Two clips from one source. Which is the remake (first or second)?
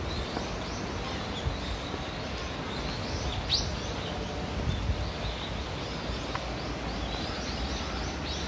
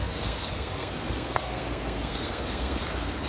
second